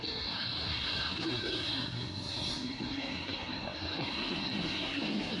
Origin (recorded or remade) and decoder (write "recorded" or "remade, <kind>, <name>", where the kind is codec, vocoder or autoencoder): remade, codec, SNAC